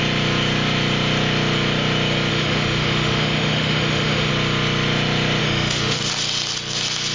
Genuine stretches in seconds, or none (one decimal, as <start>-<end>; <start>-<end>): 0.0-2.3; 4.3-5.4; 6.0-7.1